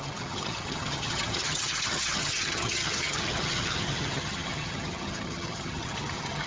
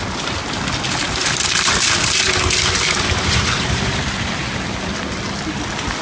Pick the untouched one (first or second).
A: second